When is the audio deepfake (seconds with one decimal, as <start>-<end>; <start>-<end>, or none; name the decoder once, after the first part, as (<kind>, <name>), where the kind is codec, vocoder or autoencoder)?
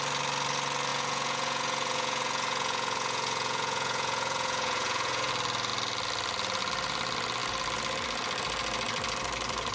0.9-5.3 (vocoder, Vocos)